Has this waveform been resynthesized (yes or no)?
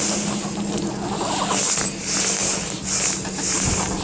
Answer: no